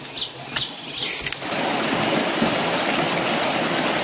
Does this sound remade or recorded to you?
recorded